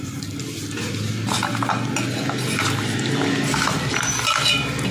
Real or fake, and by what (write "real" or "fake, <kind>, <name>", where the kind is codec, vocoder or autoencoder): real